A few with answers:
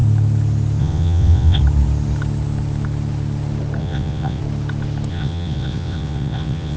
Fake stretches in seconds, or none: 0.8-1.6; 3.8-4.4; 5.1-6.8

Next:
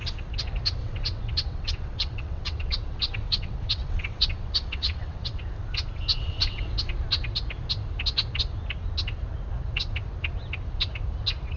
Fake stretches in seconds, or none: 0.8-5.4; 6.1-6.6

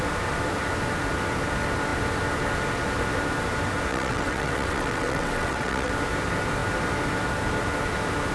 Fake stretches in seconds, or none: 3.9-5.9

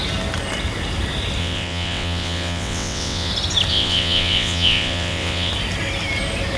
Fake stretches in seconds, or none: 1.4-3.3; 3.7-5.5

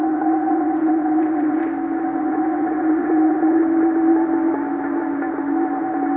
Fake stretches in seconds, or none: 0.0-1.6; 2.2-3.6

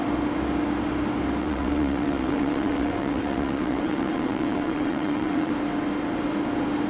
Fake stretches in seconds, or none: 1.4-5.5